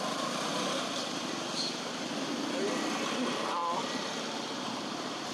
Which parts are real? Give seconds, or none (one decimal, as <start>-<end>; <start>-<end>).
0.5-3.1; 3.6-4.6